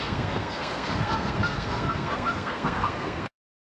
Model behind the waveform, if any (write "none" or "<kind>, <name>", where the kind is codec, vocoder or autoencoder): codec, SNAC